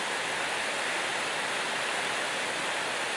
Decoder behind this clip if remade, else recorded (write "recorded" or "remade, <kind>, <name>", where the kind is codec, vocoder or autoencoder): recorded